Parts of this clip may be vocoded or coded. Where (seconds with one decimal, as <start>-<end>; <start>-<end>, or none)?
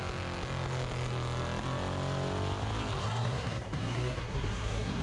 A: 3.0-5.0